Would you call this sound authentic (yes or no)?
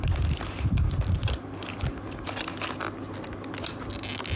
yes